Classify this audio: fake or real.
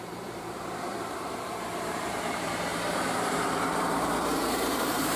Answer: fake